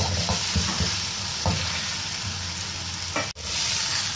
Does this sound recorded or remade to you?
recorded